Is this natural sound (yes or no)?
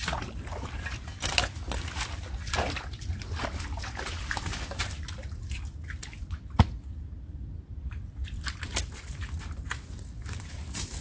yes